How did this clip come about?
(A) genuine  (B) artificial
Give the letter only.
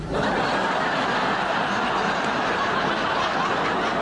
A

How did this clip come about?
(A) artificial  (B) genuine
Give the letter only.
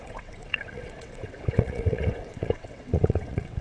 A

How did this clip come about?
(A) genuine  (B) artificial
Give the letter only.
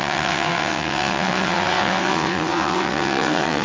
B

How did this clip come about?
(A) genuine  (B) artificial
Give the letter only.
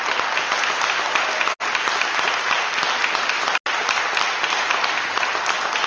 A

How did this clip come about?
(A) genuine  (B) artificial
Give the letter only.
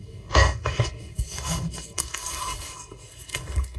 B